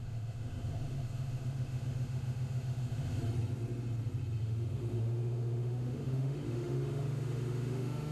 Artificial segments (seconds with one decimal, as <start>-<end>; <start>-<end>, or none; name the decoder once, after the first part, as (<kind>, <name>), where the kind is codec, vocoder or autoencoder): 0.0-3.2 (autoencoder, DAC-VAE); 4.4-8.1